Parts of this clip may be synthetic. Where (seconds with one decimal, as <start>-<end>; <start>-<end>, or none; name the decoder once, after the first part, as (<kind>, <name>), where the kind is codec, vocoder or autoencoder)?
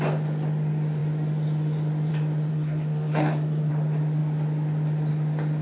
2.5-3.7 (codec, SNAC)